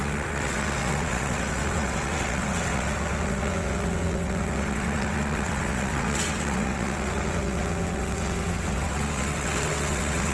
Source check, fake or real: fake